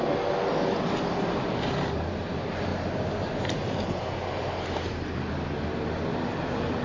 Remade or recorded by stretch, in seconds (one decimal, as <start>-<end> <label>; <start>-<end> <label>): 0.0-6.8 recorded